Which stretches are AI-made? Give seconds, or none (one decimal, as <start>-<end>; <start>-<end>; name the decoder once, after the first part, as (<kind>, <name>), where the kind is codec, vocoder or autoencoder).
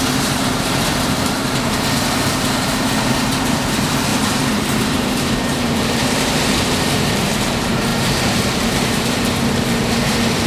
0.0-10.5 (vocoder, BigVGAN v2)